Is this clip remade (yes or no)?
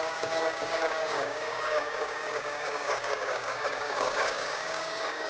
yes